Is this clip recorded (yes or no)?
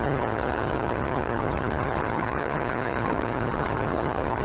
no